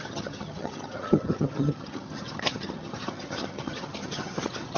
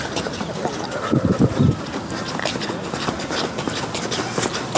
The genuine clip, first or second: second